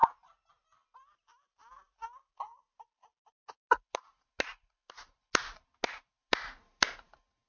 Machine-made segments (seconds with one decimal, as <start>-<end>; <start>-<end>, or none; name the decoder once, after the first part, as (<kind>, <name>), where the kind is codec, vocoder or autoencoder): none